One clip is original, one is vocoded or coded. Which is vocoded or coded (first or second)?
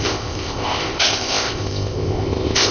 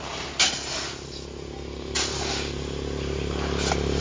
first